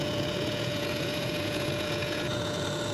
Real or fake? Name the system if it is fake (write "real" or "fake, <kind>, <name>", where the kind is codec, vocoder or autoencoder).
fake, vocoder, Vocos